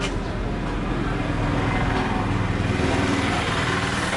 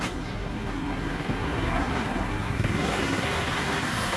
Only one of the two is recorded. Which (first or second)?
first